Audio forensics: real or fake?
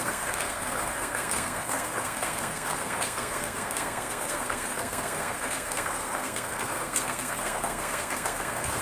fake